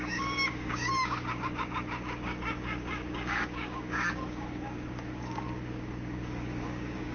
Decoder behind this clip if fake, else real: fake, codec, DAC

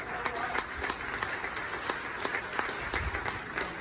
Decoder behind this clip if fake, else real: real